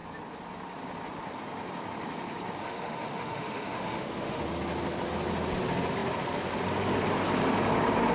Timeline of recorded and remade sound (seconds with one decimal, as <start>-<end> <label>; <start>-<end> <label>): 0.0-2.6 recorded; 2.6-4.4 remade; 4.4-8.1 recorded